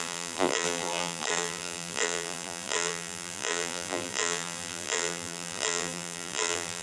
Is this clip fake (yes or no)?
yes